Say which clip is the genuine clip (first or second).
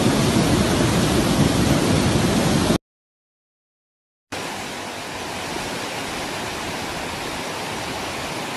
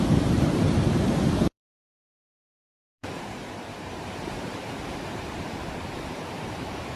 first